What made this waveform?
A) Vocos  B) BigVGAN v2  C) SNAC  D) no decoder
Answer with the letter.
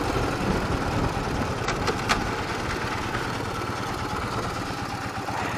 D